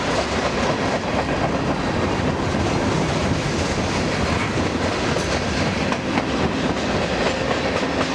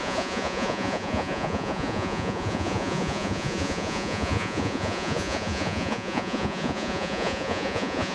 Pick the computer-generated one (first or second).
second